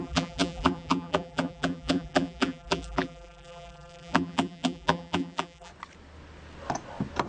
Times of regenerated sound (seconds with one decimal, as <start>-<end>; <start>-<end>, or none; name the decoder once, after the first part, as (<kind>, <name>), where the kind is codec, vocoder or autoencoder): 0.0-5.7 (vocoder, BigVGAN v2)